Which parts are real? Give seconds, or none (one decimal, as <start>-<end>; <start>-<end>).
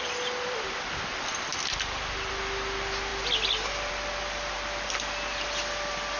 0.0-6.2